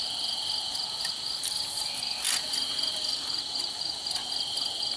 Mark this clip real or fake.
real